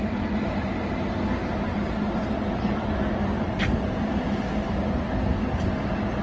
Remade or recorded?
recorded